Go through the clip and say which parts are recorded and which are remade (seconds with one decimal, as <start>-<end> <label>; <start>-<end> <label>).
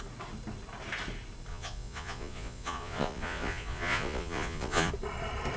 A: 0.0-1.5 recorded; 1.5-4.9 remade; 4.9-5.6 recorded